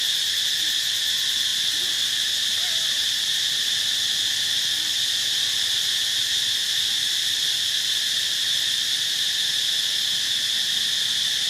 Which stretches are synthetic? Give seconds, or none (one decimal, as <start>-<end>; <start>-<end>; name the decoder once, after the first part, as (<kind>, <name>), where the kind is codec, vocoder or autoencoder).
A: none